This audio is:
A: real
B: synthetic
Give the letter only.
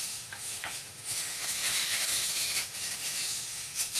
B